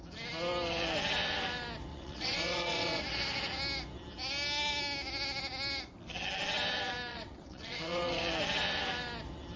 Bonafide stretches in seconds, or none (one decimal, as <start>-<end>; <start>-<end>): 0.0-1.9; 3.0-7.1; 8.2-9.6